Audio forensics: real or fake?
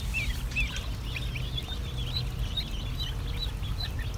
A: real